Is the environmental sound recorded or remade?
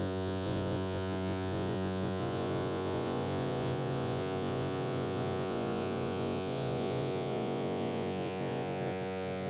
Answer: remade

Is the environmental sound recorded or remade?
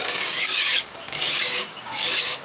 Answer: remade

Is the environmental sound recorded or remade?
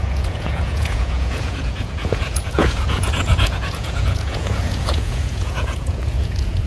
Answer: remade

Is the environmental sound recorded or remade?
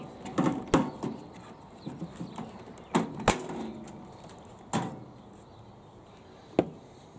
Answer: recorded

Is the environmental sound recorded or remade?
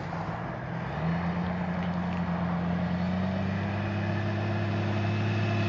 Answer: recorded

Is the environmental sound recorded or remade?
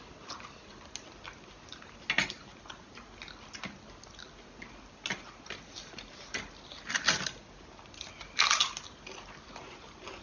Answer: recorded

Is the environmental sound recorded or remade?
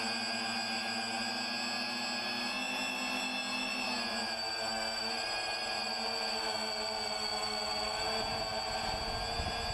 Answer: recorded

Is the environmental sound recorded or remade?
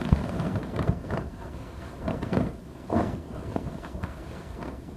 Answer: remade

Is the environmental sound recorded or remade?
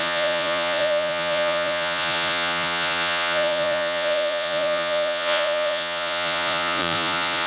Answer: remade